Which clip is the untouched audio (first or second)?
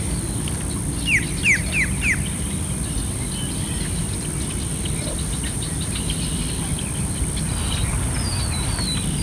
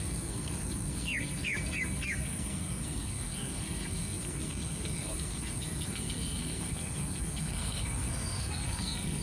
first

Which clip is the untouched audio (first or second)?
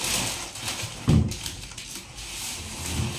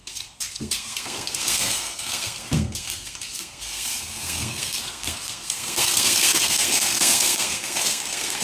first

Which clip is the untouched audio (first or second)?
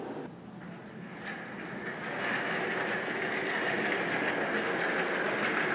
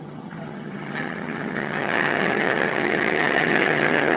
first